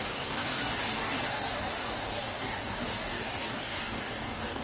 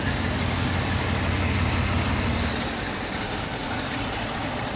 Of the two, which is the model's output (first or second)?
first